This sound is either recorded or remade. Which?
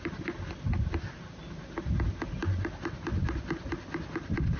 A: recorded